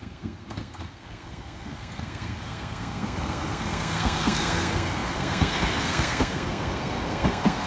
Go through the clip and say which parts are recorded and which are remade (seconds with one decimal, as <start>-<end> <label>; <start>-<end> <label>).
0.0-7.7 remade